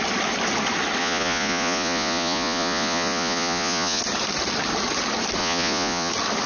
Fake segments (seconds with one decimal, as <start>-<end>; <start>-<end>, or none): 1.0-4.0; 5.4-6.1